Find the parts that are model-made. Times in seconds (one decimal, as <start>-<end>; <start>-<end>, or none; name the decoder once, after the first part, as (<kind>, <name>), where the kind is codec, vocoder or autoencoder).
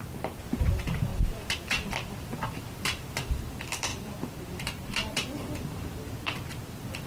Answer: 1.1-3.4 (vocoder, BigVGAN v2); 3.9-4.9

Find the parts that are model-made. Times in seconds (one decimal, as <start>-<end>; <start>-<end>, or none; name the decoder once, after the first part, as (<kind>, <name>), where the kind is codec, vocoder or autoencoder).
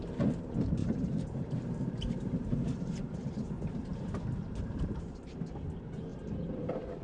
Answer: 0.8-5.0 (vocoder, BigVGAN v2); 6.1-7.0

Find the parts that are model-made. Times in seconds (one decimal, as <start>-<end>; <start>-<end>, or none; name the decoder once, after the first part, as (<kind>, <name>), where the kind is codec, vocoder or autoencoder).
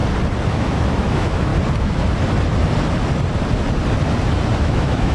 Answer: 0.5-1.5 (autoencoder, DAC-VAE); 4.6-5.1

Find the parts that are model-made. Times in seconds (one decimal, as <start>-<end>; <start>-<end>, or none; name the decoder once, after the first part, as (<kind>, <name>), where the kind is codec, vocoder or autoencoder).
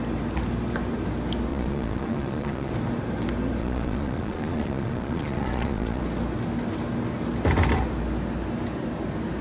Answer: 1.5-2.7 (vocoder, Vocos); 3.6-6.0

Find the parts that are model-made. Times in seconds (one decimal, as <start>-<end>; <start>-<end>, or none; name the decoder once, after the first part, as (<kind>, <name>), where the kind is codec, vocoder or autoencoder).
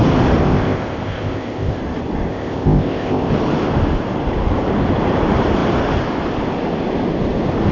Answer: 0.4-1.8 (codec, ZipCodec); 2.3-3.3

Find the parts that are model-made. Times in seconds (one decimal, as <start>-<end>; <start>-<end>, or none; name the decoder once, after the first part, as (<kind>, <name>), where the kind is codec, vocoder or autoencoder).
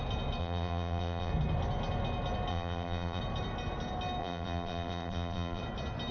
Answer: 0.4-1.3 (vocoder, BigVGAN v2); 2.5-3.2; 4.2-5.6